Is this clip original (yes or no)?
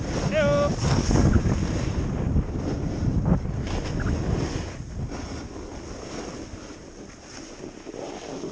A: yes